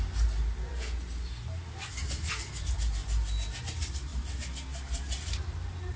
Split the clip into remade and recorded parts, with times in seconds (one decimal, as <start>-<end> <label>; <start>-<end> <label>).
0.0-6.0 recorded